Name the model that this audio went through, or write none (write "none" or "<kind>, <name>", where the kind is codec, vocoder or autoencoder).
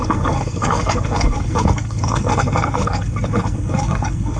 codec, SNAC